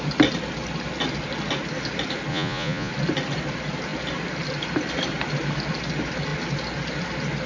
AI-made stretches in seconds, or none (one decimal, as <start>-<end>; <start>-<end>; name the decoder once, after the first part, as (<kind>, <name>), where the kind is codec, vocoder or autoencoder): 2.3-2.9 (vocoder, Vocos)

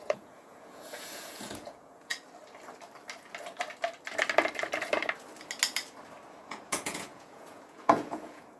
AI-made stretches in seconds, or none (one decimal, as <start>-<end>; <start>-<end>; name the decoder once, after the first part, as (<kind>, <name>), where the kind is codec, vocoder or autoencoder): 0.0-2.1 (vocoder, Vocos); 6.4-8.6

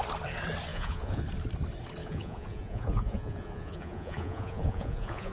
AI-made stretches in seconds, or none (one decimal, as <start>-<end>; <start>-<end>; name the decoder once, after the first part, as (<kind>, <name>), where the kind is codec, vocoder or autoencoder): 0.7-1.2 (vocoder, Vocos); 2.0-5.3

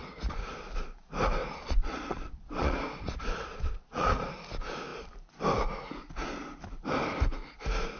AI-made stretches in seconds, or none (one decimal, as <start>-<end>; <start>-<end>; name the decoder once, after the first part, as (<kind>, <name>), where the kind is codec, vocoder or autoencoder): 1.4-4.3 (vocoder, Vocos)